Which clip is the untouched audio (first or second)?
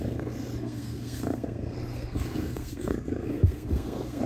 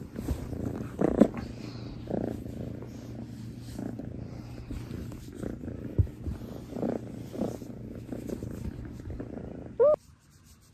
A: second